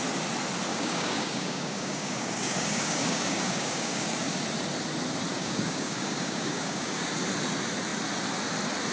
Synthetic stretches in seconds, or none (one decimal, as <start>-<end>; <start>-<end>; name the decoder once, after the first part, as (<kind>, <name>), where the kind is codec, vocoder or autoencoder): 0.7-4.4 (codec, DAC); 5.3-7.1